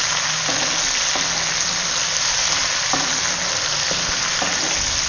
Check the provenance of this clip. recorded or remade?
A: recorded